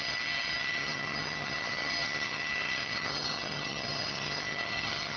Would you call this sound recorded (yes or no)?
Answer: no